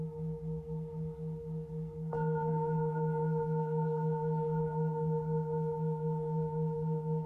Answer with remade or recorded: remade